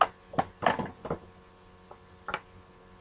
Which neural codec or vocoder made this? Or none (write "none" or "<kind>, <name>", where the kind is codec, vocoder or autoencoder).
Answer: none